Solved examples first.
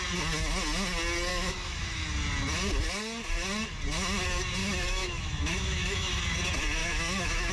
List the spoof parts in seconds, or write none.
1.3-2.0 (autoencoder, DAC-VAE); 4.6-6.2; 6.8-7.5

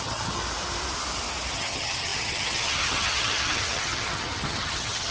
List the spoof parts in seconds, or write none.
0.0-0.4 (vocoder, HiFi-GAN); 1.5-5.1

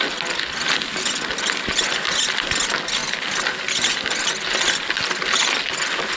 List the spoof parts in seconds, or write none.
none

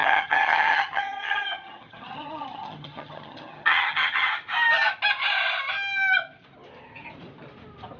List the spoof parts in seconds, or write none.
0.0-4.3 (vocoder, HiFi-GAN)

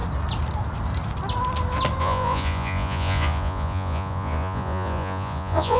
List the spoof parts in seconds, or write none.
2.0-5.8 (vocoder, Vocos)